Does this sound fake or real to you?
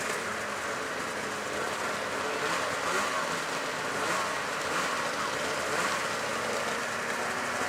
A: real